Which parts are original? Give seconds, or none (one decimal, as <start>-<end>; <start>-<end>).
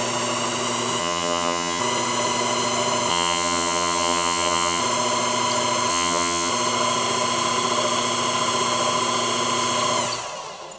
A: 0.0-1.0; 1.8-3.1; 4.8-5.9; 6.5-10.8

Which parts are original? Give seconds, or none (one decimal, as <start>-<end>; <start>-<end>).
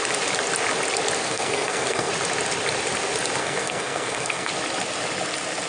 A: 0.0-1.2; 2.1-3.4; 4.5-5.7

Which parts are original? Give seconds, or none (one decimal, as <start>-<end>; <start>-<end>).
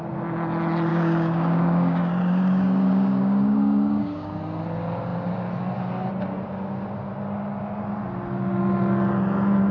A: 0.0-0.9; 4.4-9.7